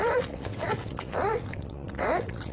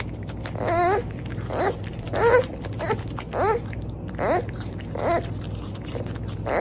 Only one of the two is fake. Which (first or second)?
first